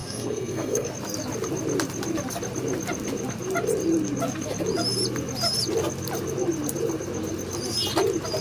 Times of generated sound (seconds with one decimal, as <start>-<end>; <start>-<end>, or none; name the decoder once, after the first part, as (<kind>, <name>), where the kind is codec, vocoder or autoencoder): 0.0-0.9 (codec, SNAC)